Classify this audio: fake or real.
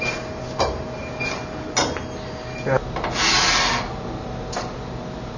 real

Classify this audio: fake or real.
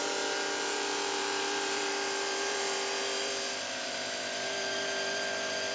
fake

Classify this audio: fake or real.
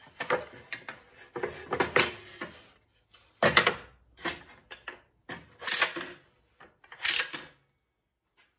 real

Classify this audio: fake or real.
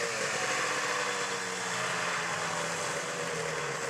real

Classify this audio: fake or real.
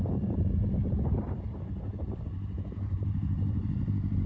fake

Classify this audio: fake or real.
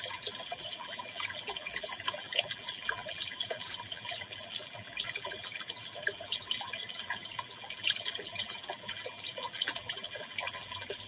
fake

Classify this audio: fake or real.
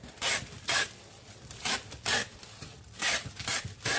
fake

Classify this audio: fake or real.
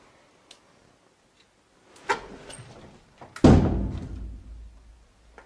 real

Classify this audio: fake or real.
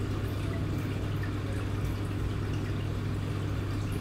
real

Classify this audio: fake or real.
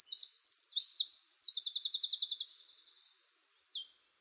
real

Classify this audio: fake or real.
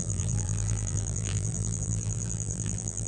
fake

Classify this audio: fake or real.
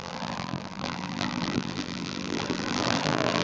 fake